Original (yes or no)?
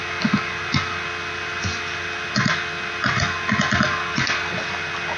yes